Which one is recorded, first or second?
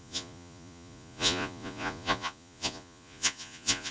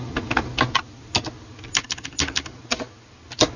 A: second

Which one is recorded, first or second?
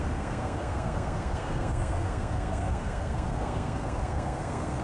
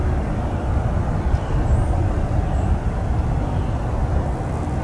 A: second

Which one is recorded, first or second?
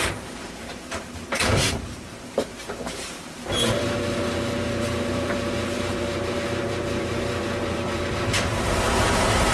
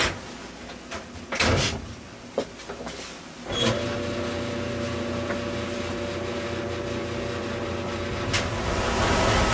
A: second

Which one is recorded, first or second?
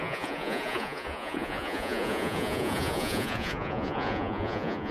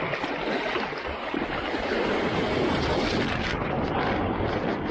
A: second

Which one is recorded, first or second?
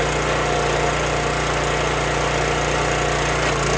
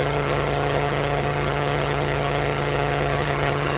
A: first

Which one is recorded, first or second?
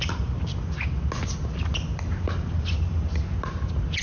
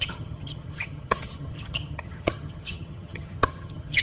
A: first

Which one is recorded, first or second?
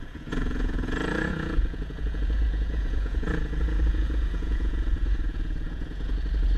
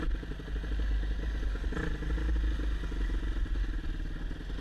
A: second